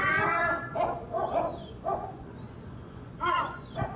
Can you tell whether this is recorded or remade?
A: remade